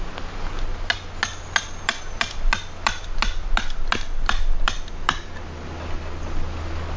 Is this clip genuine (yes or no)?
yes